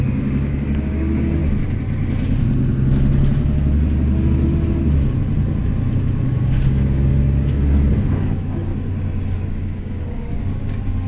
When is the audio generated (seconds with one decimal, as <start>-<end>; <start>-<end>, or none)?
0.0-1.4; 6.4-7.1; 7.9-8.7; 9.5-11.1